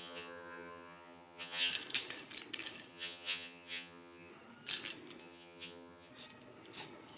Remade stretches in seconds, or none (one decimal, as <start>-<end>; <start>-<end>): 0.0-1.7; 2.9-4.3; 5.2-6.1